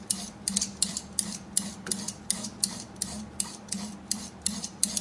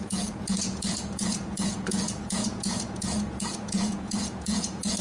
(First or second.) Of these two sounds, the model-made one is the second